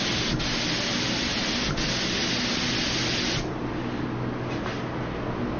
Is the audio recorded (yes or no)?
yes